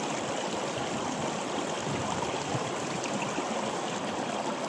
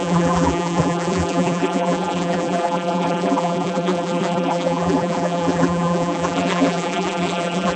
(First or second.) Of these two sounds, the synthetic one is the second